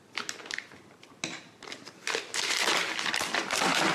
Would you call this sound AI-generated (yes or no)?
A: no